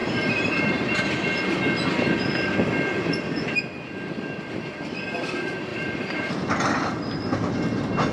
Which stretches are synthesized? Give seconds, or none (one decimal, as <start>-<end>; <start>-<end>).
0.0-1.1; 5.7-6.3